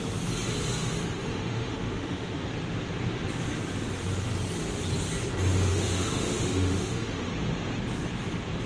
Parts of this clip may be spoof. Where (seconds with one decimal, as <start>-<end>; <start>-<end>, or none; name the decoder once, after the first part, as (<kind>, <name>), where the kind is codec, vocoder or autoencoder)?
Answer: 1.2-2.3 (autoencoder, DAC-VAE); 5.7-7.3